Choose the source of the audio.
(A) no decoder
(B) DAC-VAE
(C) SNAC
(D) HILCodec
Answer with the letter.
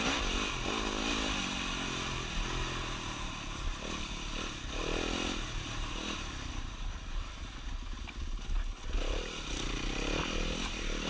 A